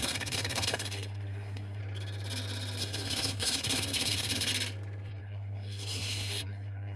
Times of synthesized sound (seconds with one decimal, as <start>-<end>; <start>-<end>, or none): 0.0-1.8; 2.8-4.5; 5.2-7.0